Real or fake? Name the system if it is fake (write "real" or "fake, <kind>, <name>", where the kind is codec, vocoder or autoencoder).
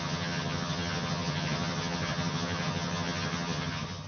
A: fake, vocoder, HiFi-GAN